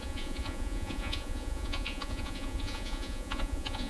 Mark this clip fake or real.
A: fake